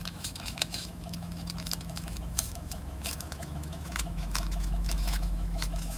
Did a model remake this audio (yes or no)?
yes